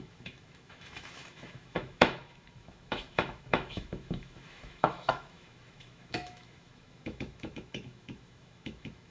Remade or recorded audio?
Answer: remade